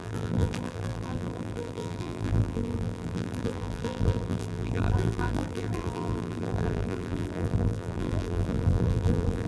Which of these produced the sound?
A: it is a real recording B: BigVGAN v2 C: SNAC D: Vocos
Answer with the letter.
B